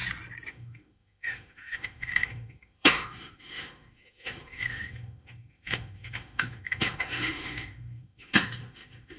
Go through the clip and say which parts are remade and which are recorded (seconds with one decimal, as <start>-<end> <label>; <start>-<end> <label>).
0.0-0.5 recorded; 0.5-9.2 remade

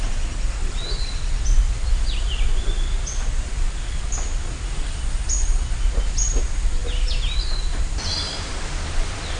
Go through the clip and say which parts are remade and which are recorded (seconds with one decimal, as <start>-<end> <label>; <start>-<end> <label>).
0.0-9.4 recorded

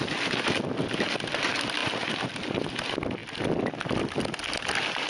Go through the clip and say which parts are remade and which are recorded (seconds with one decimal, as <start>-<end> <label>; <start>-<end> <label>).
0.0-1.8 recorded; 1.8-2.6 remade; 2.6-5.1 recorded

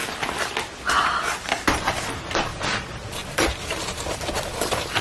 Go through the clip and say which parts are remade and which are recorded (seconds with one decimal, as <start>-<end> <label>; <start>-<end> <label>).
0.0-2.1 recorded; 2.1-2.5 remade; 2.5-3.3 recorded; 3.3-5.0 remade

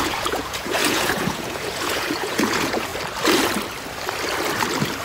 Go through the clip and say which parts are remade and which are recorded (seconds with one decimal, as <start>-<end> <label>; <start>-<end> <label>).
0.0-2.9 remade; 2.9-5.0 recorded

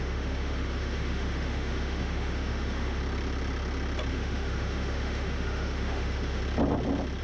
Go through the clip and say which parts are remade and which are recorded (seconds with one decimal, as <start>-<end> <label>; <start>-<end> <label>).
0.0-3.0 remade; 3.0-4.1 recorded; 4.1-6.4 remade; 6.4-7.2 recorded